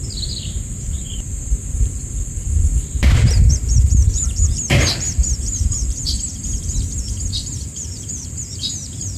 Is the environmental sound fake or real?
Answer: fake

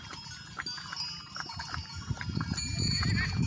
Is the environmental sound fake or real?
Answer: real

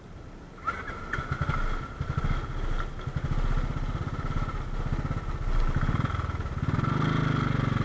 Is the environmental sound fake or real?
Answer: real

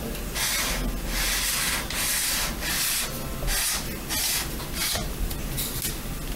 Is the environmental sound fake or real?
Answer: real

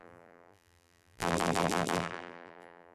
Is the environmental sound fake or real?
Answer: fake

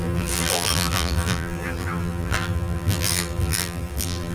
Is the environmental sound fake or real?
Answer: fake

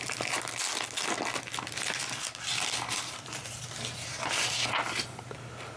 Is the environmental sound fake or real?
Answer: real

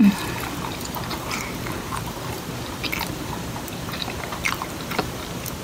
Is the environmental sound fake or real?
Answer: fake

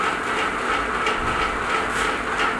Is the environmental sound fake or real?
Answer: real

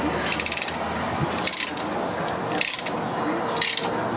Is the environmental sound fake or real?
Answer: real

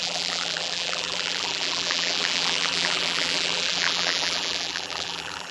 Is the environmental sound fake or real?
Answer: fake